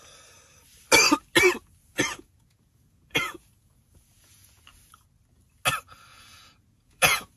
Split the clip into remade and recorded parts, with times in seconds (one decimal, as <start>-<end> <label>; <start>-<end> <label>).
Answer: 0.0-1.8 recorded; 1.8-4.6 remade; 4.6-6.1 recorded; 6.1-7.4 remade

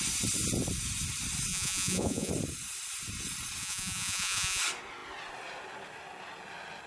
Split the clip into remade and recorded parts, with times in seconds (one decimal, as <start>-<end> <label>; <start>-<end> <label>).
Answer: 0.0-1.5 recorded; 1.5-2.3 remade; 2.3-3.6 recorded; 3.6-4.6 remade; 4.6-6.9 recorded

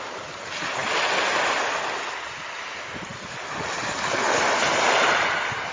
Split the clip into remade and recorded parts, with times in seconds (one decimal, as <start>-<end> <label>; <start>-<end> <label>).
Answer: 0.0-5.7 recorded

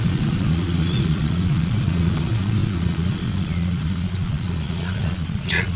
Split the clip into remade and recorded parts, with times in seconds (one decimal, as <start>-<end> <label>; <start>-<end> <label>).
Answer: 0.0-5.8 remade

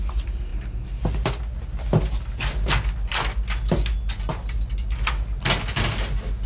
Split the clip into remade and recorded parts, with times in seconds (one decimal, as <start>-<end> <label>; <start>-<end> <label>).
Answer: 0.0-6.5 recorded

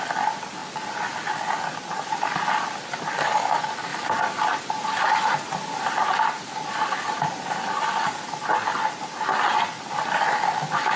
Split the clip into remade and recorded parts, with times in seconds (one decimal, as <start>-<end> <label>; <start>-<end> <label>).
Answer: 0.0-11.0 recorded

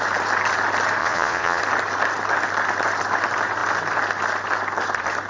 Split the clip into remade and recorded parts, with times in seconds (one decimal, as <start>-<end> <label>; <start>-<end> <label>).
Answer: 0.0-1.0 recorded; 1.0-1.6 remade; 1.6-5.3 recorded